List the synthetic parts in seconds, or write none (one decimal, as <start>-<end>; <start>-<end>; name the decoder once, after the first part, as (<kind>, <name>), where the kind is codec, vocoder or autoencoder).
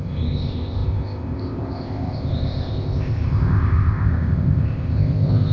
0.0-5.5 (codec, ZipCodec)